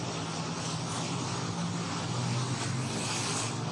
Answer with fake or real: real